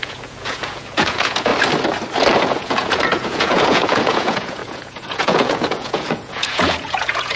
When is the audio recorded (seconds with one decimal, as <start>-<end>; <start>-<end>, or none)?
1.5-2.4